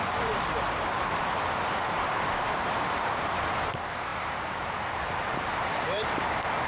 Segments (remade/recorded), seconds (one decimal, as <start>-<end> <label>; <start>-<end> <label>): 0.0-6.7 remade